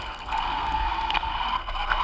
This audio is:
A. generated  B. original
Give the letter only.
A